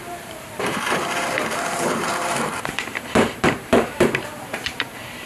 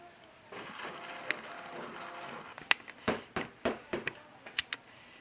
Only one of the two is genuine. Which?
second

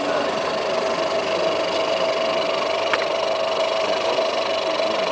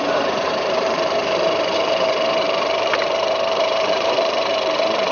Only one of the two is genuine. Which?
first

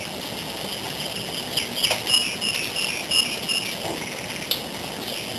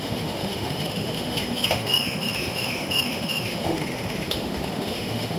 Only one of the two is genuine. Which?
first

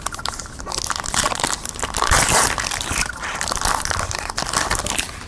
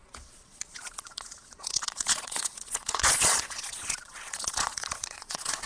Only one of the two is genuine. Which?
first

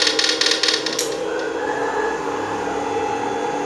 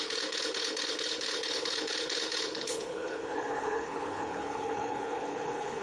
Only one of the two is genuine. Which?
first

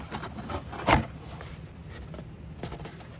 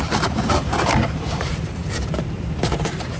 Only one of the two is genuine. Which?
first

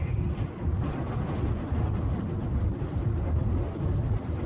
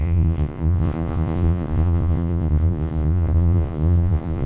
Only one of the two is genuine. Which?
first